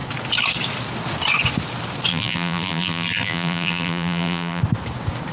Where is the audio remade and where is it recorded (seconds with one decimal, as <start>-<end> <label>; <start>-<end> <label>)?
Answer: 0.0-2.1 recorded; 2.1-4.6 remade; 4.6-5.3 recorded